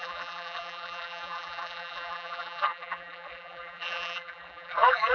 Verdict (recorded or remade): remade